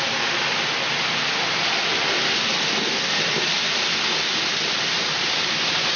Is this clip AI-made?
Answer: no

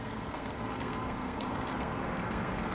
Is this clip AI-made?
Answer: yes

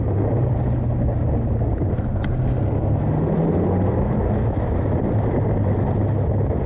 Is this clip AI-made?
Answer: no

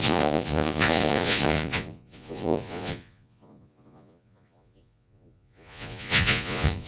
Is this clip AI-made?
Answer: yes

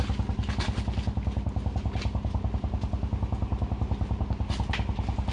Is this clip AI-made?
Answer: no